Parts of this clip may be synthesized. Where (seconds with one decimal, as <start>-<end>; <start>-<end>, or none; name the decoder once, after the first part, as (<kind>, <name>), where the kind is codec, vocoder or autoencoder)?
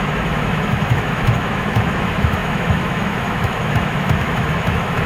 0.0-5.1 (autoencoder, DAC-VAE)